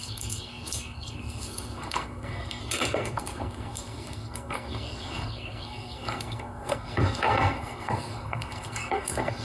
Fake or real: fake